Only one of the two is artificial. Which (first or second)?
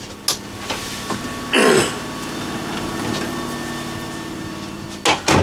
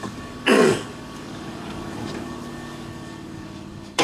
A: second